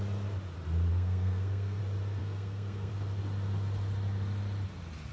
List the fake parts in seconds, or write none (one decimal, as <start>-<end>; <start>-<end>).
0.9-1.8; 2.2-2.9